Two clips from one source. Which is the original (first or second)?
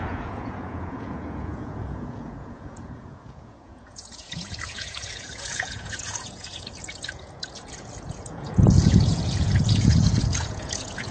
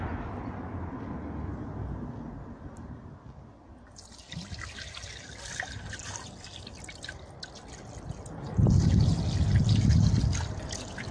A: second